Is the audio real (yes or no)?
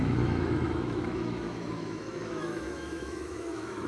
no